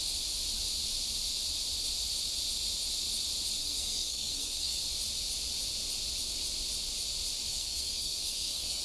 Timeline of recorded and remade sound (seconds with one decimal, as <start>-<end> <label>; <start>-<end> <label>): 0.0-3.6 recorded; 3.6-4.8 remade; 4.8-7.5 recorded; 7.5-8.8 remade